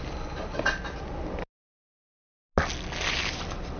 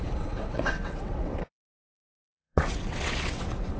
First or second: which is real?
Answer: first